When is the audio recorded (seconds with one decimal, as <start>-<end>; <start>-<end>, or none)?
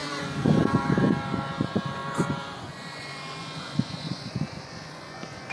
none